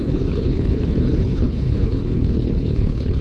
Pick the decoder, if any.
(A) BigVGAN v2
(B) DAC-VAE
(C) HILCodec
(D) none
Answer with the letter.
C